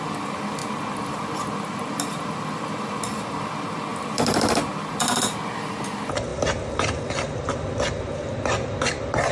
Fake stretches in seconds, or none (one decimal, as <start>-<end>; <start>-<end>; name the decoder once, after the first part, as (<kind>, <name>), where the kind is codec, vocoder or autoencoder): none